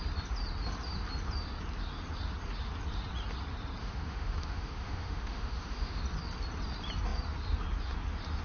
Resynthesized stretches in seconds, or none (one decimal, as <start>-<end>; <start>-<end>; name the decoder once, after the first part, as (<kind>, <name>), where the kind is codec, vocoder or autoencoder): 3.8-6.0 (autoencoder, DAC-VAE)